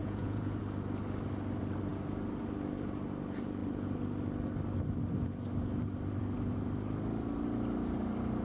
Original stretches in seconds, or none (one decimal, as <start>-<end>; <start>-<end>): 0.6-8.4